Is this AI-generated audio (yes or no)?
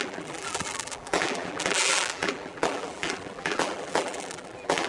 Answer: yes